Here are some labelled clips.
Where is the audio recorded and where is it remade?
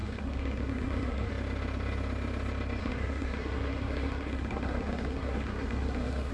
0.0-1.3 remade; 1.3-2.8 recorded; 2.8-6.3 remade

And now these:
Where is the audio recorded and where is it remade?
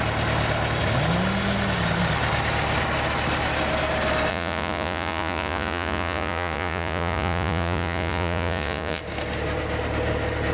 0.0-4.3 recorded; 4.3-9.0 remade; 9.0-10.5 recorded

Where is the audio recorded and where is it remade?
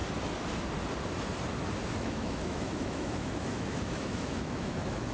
0.0-2.0 recorded; 2.0-5.1 remade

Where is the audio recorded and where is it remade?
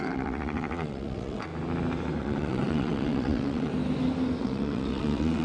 0.0-1.5 remade; 1.5-2.2 recorded; 2.2-3.7 remade; 3.7-4.4 recorded; 4.4-5.4 remade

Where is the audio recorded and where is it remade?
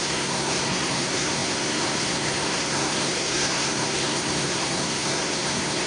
0.0-5.9 remade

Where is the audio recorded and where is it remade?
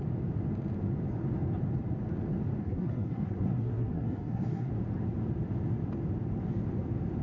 0.0-2.6 recorded; 2.6-4.7 remade; 4.7-7.2 recorded